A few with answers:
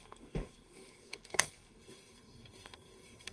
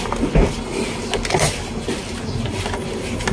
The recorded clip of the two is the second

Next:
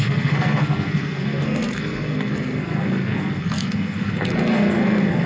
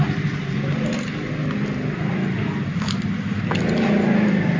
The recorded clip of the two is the second